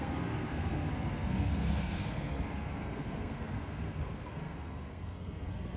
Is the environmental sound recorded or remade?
remade